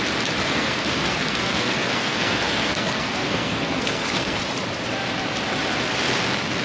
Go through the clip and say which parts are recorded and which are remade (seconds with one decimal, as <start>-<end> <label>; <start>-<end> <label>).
0.0-0.4 recorded; 0.4-4.4 remade; 4.4-6.6 recorded